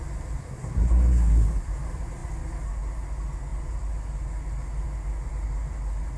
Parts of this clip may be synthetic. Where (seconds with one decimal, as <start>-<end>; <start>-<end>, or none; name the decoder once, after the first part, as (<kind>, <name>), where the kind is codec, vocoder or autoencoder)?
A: 0.4-1.4 (codec, SNAC)